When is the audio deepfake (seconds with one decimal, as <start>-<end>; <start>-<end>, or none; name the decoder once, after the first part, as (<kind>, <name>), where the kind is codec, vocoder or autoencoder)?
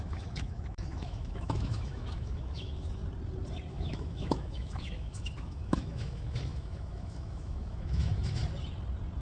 0.0-3.0 (autoencoder, DAC-VAE); 3.7-8.4